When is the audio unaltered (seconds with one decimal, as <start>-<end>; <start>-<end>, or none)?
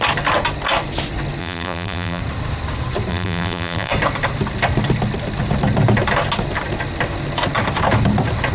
0.0-1.4; 2.2-3.1; 3.9-8.5